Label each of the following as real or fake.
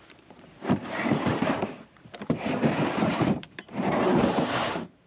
fake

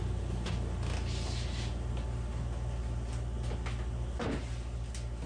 real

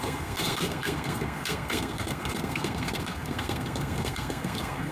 fake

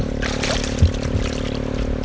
real